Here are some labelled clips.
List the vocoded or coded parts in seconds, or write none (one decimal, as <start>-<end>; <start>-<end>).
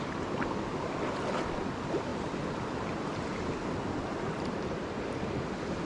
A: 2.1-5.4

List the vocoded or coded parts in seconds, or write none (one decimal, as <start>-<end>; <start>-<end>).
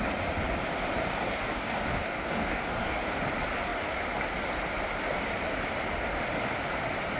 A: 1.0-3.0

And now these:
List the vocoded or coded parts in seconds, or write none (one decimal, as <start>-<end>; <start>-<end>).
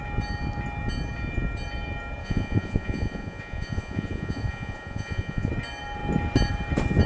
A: 2.2-5.5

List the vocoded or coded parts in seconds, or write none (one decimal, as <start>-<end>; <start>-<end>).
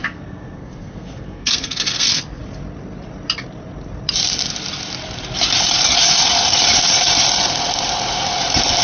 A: 0.0-2.4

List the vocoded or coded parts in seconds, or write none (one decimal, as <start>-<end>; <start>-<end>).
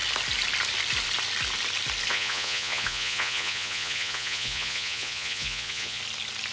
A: 2.1-6.0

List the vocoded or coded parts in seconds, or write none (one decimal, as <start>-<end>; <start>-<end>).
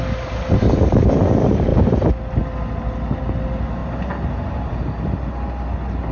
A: none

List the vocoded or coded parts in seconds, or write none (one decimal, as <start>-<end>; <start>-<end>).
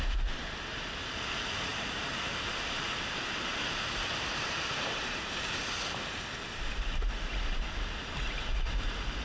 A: 1.7-5.6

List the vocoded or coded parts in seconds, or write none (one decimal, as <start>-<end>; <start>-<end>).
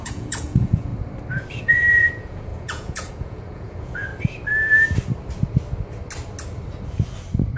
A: 0.0-0.9; 1.6-4.1